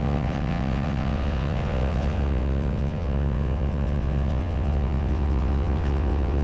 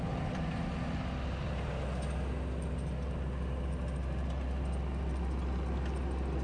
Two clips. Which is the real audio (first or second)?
second